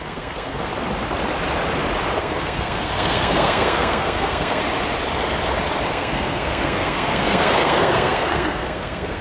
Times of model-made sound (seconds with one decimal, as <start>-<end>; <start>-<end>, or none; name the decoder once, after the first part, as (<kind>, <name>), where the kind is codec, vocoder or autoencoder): 0.0-0.7 (codec, SNAC); 2.2-4.6; 5.9-9.2